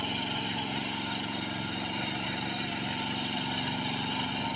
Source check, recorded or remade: recorded